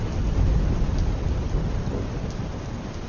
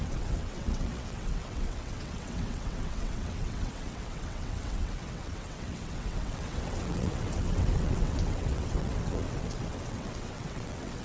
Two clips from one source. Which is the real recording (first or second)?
first